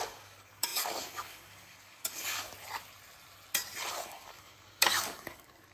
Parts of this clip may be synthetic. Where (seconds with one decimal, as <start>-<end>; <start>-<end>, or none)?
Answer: 0.0-2.5; 3.9-5.7